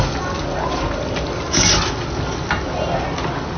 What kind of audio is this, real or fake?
real